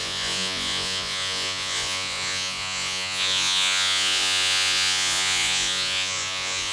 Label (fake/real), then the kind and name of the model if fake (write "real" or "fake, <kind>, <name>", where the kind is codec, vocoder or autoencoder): fake, vocoder, Vocos